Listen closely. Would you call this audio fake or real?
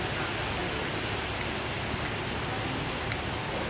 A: real